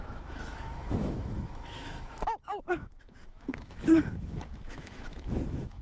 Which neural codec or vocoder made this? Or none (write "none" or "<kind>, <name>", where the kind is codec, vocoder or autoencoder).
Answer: autoencoder, DAC-VAE